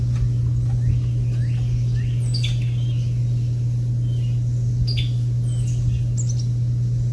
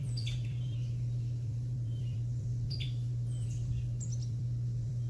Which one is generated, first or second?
second